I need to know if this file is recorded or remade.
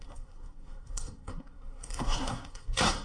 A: remade